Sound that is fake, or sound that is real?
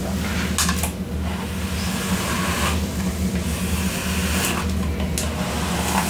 real